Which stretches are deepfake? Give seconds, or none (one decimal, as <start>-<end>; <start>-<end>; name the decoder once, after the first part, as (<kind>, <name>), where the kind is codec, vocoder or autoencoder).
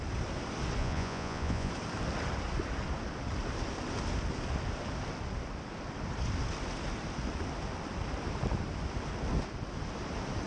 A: 0.8-1.7 (vocoder, Vocos)